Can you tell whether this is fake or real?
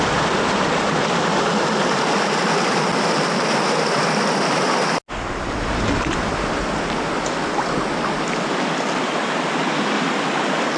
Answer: real